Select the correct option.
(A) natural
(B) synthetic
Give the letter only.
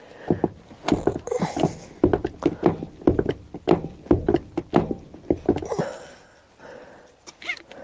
A